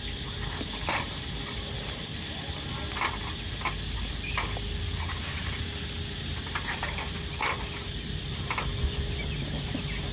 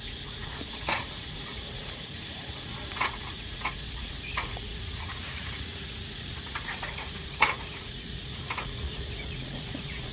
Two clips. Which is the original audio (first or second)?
first